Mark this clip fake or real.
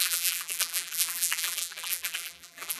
fake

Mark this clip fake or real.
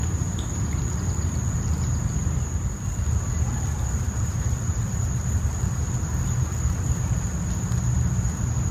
real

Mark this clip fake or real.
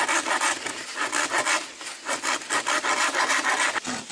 real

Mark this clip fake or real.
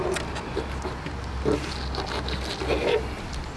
real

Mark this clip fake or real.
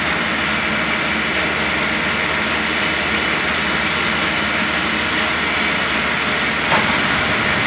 real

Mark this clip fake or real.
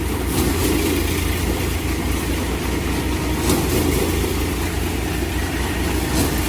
real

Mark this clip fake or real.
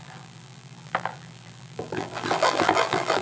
fake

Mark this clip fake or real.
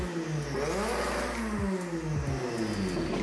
real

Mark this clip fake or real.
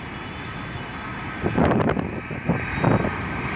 fake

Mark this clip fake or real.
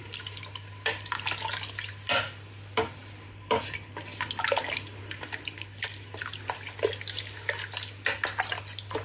real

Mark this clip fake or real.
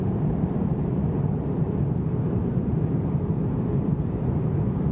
fake